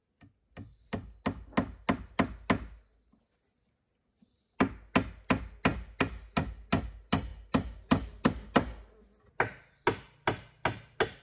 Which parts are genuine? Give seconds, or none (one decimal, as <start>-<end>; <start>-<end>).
0.0-11.2